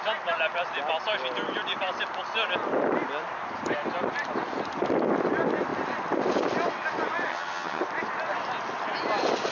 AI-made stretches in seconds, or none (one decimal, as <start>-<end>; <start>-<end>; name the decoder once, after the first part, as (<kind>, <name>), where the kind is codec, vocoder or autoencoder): 7.3-7.8 (vocoder, HiFi-GAN)